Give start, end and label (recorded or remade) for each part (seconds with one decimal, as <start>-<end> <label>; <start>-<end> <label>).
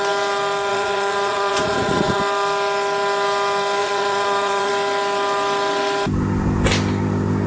0.0-0.7 recorded; 0.7-2.2 remade; 2.2-3.8 recorded; 3.8-4.7 remade; 4.7-7.5 recorded